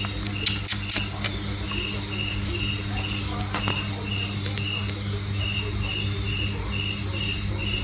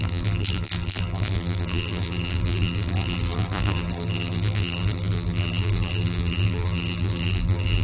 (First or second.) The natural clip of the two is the first